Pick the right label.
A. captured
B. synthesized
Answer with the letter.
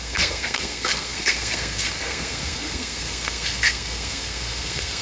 B